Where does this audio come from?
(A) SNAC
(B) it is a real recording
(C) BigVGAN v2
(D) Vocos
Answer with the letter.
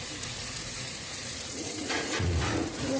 D